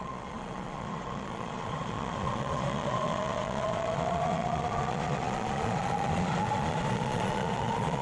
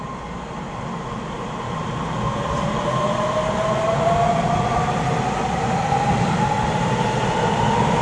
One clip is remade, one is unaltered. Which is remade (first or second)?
first